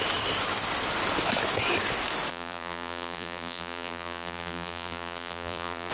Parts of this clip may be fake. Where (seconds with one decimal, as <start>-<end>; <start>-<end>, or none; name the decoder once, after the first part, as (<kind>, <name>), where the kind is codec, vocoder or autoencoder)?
2.3-5.9 (vocoder, BigVGAN v2)